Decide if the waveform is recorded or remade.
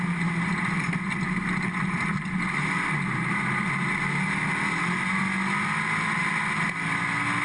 recorded